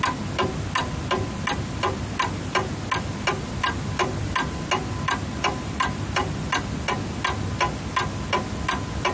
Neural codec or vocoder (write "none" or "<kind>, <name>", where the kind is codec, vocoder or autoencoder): none